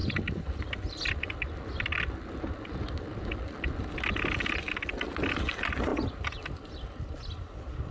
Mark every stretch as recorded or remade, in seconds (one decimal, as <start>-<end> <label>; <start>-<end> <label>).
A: 0.0-7.9 recorded